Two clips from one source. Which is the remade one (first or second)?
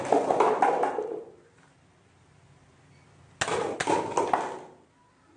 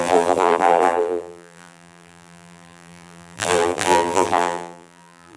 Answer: second